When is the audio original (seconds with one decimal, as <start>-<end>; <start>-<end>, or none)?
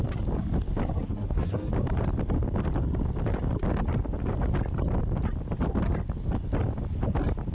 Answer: 0.0-1.0; 1.7-7.5